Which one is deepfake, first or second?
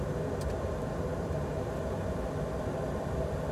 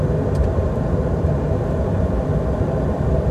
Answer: second